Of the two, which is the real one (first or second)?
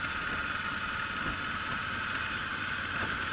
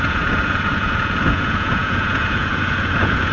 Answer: first